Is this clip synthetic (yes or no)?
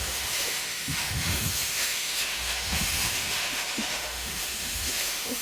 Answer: yes